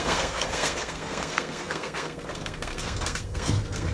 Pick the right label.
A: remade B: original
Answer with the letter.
A